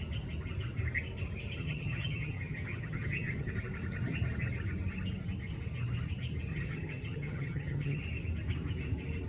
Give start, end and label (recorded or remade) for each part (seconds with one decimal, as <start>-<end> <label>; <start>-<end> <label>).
0.0-1.6 recorded; 1.6-3.5 remade; 3.5-6.5 recorded; 6.5-8.0 remade; 8.0-9.3 recorded